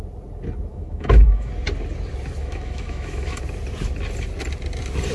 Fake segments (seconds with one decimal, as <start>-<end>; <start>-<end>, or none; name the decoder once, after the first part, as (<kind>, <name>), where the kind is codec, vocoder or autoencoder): 0.7-1.5 (autoencoder, DAC-VAE); 2.4-3.4